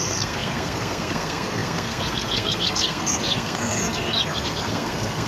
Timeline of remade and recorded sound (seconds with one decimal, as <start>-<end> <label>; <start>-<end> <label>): 0.0-5.3 remade